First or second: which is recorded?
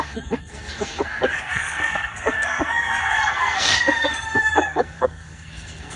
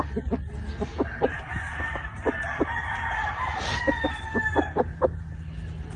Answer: second